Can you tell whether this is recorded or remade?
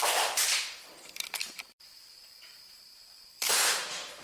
remade